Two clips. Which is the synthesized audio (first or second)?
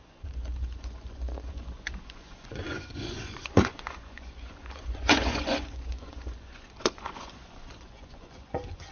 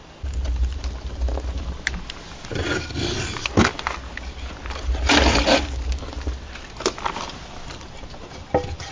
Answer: first